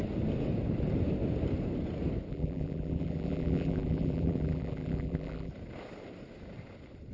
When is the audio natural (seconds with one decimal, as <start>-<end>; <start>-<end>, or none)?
0.0-2.3; 5.5-7.1